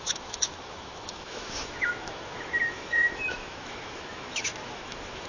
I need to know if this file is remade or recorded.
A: remade